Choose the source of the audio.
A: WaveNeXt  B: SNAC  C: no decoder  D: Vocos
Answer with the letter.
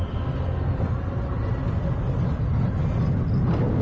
C